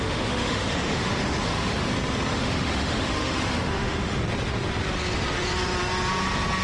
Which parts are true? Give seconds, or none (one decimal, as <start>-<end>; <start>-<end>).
1.9-2.3; 4.2-6.6